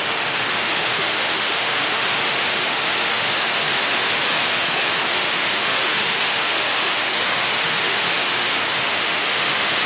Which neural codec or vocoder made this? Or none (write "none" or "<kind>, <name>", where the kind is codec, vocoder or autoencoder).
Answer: autoencoder, DAC-VAE